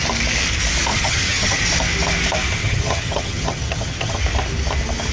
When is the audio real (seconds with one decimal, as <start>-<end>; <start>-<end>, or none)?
0.0-0.9; 1.6-2.6; 4.2-5.1